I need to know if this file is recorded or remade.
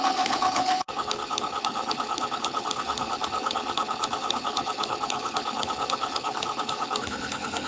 remade